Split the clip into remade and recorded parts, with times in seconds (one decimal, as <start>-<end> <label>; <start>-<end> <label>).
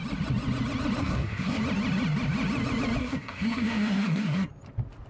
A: 0.0-1.0 recorded; 1.0-1.6 remade; 1.6-3.0 recorded; 3.0-4.5 remade; 4.5-5.1 recorded